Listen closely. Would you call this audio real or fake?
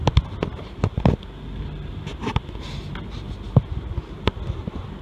real